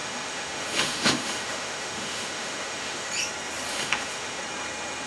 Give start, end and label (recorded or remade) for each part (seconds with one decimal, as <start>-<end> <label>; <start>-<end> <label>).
0.0-3.1 remade; 3.1-3.7 recorded; 3.7-4.4 remade; 4.4-5.1 recorded